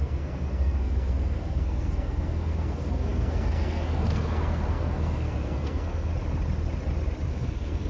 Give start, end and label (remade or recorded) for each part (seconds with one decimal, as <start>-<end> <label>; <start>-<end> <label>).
0.0-6.1 remade; 6.1-7.3 recorded; 7.3-7.9 remade